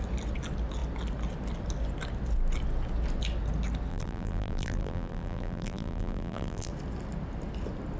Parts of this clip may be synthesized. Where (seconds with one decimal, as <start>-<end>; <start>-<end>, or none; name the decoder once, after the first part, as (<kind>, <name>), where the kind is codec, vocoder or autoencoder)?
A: 3.9-6.7 (vocoder, BigVGAN v2)